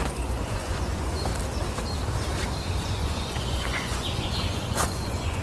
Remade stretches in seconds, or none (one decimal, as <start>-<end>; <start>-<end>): 0.0-1.3; 2.8-5.4